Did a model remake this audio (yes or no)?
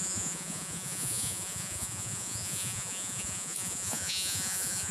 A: yes